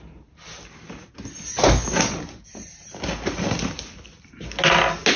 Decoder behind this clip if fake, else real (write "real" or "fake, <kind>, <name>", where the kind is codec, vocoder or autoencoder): real